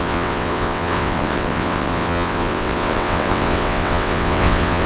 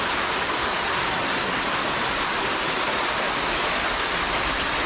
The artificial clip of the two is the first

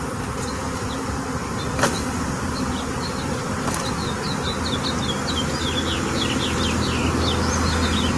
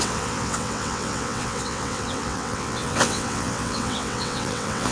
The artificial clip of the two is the second